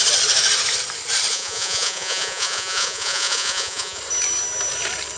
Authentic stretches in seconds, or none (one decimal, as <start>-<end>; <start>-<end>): 0.0-1.3; 4.0-5.2